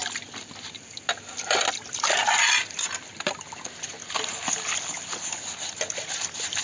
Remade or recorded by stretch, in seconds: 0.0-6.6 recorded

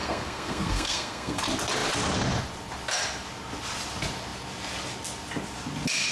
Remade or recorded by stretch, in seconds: 0.0-1.4 remade; 1.4-6.1 recorded

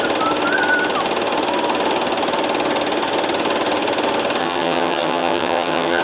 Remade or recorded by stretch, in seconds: 0.0-4.4 recorded; 4.4-6.0 remade

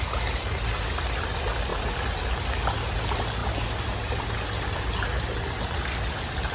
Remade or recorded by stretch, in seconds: 0.0-6.5 recorded

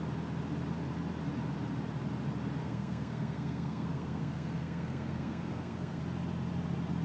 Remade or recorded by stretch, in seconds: 0.0-2.6 recorded; 2.6-6.0 remade; 6.0-7.0 recorded

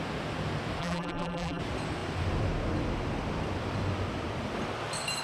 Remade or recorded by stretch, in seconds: 0.0-0.8 recorded; 0.8-1.6 remade; 1.6-5.2 recorded

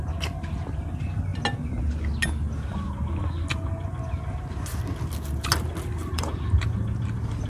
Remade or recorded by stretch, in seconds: 0.0-6.0 recorded; 6.0-7.5 remade

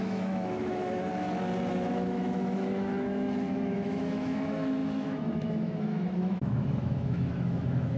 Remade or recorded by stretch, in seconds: 0.0-1.1 remade; 1.1-1.7 recorded; 1.7-8.0 remade